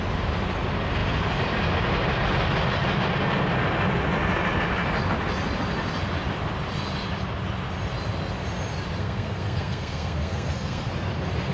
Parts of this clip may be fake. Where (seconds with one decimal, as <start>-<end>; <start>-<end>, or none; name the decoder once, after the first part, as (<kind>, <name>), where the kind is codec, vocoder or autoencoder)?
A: 9.0-10.9 (codec, SNAC)